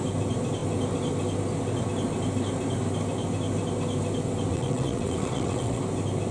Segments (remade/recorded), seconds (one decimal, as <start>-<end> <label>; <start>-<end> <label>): 0.0-4.5 recorded; 4.5-5.8 remade; 5.8-6.3 recorded